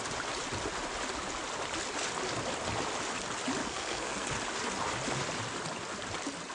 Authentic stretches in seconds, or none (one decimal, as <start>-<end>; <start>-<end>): 0.0-3.6; 4.3-6.5